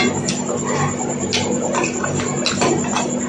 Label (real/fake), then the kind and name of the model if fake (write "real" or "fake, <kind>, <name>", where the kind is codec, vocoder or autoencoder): real